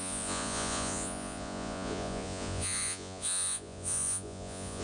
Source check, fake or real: fake